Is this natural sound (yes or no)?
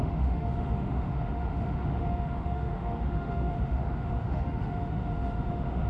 no